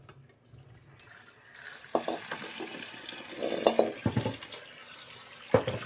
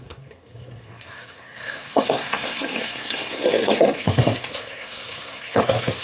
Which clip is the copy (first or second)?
second